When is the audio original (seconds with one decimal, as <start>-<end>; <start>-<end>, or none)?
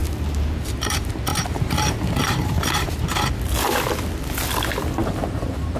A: 0.0-1.3; 2.9-5.0